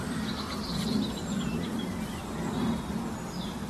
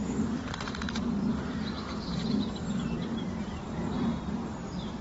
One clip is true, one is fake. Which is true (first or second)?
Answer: first